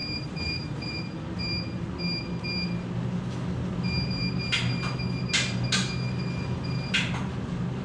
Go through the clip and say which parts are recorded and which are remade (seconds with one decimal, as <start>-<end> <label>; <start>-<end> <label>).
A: 0.0-1.0 remade; 1.0-7.8 recorded